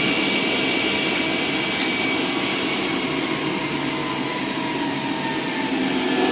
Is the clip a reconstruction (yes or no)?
no